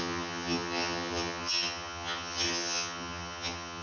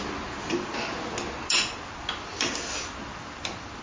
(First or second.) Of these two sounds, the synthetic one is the first